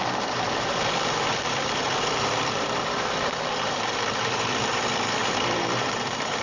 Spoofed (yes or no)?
yes